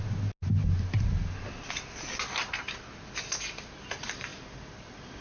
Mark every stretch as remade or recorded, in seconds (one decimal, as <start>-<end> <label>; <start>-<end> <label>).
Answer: 0.0-5.2 recorded